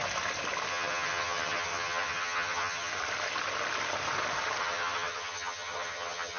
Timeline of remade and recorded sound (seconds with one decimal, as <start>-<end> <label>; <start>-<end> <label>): 0.0-0.7 recorded; 0.7-2.9 remade; 2.9-4.6 recorded; 4.6-6.4 remade